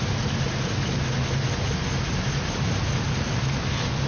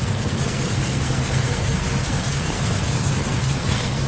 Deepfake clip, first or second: second